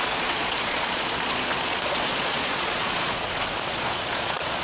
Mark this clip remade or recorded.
remade